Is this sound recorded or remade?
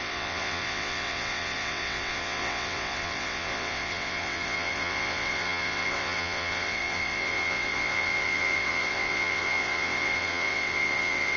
remade